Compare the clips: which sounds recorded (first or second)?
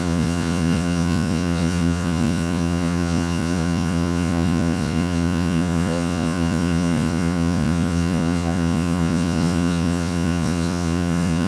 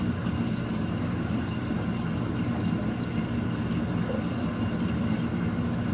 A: second